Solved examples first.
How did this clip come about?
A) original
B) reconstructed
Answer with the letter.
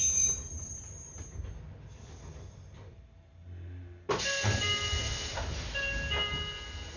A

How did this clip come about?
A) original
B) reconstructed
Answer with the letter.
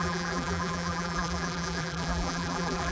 B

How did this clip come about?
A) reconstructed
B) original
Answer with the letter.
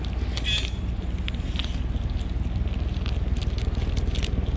B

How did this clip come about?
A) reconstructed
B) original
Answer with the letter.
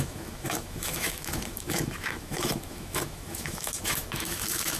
A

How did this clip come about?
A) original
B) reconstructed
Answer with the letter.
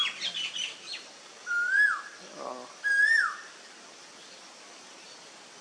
A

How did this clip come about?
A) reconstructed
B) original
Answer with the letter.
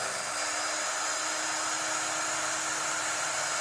B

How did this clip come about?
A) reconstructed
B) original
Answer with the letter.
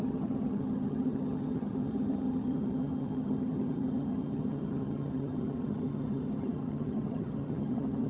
A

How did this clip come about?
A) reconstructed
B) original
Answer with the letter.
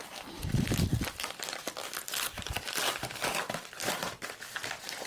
A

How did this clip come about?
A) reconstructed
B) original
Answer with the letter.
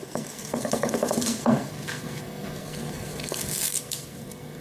A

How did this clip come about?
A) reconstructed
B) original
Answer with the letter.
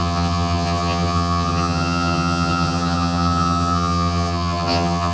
A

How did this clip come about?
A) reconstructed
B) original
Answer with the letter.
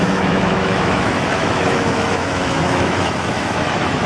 A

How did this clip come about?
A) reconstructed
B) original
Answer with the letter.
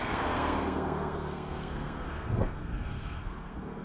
A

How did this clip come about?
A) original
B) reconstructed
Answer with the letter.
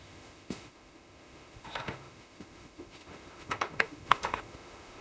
B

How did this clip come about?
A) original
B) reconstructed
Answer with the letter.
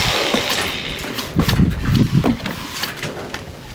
A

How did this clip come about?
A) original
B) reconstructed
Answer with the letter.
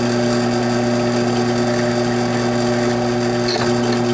A